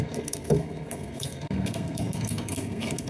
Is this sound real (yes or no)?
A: no